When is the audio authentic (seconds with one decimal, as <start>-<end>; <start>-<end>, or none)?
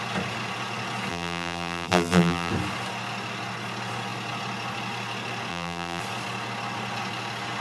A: 0.0-1.1; 2.5-5.5; 6.0-7.6